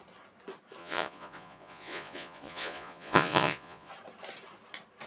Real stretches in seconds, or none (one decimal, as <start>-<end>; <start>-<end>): 0.0-0.8; 3.9-5.1